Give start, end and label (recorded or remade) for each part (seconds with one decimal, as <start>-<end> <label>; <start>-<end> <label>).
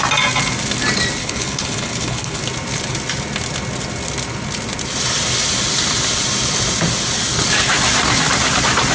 0.0-1.2 recorded; 1.2-2.4 remade; 2.4-8.9 recorded